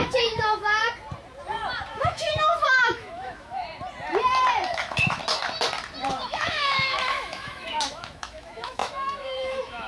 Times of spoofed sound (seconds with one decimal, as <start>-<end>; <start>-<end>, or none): 0.0-0.8; 1.9-3.6; 4.7-5.2; 6.1-9.9